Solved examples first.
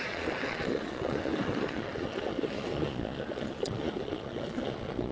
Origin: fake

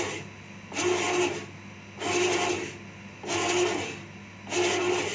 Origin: real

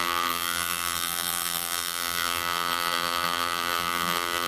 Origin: fake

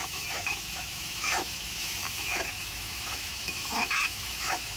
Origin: fake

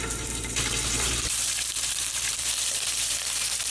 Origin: fake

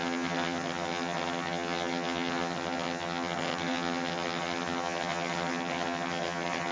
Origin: fake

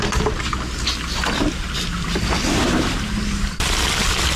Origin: real